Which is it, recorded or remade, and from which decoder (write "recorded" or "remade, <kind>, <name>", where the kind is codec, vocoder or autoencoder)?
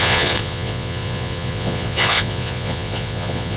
remade, vocoder, Vocos